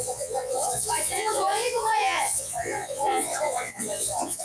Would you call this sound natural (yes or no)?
no